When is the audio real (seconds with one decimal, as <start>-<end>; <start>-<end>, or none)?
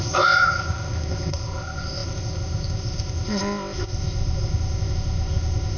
none